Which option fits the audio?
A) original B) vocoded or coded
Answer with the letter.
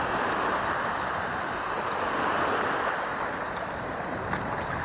A